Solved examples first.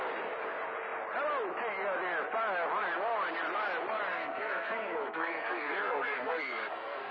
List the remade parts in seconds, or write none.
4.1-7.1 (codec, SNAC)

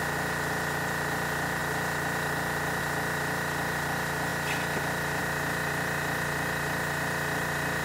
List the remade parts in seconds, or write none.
none

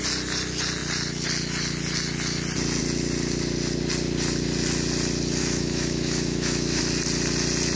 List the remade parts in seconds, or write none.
5.4-6.8 (autoencoder, DAC-VAE)

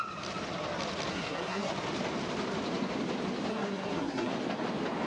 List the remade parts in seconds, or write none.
1.1-1.7 (codec, SNAC); 3.5-4.3

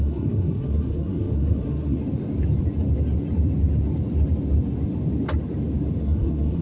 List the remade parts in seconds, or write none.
0.0-2.0 (codec, SNAC); 6.0-6.6

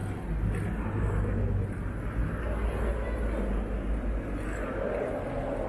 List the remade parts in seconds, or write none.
none